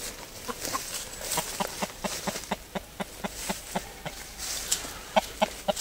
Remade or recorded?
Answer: recorded